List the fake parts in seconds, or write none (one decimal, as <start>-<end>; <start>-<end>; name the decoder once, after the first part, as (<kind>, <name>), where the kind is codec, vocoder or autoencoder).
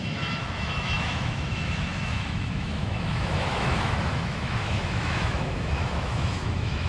0.0-6.9 (autoencoder, DAC-VAE)